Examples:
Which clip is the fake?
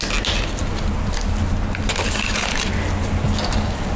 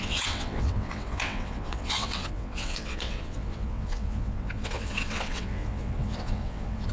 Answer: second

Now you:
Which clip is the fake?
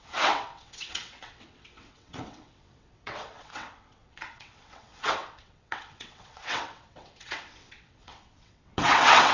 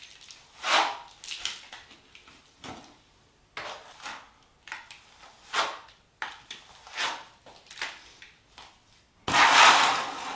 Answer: first